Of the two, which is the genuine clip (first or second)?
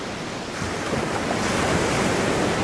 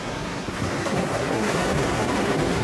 first